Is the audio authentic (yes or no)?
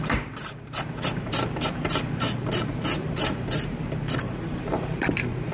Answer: no